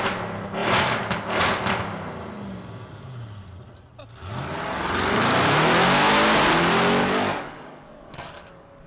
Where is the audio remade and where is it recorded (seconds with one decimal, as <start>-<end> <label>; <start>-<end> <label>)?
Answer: 0.0-7.0 recorded; 7.0-8.9 remade